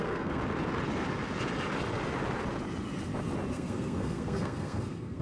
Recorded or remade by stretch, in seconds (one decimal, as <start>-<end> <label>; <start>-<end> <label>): 0.0-0.4 remade; 0.4-3.5 recorded; 3.5-5.2 remade